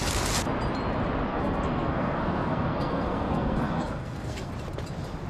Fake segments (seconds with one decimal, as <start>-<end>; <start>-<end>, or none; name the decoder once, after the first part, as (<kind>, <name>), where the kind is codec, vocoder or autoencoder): 1.3-4.5 (codec, SNAC)